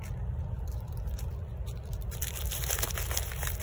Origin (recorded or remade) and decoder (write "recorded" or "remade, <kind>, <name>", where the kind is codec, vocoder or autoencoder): remade, vocoder, BigVGAN v2